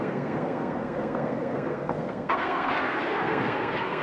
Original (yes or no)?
no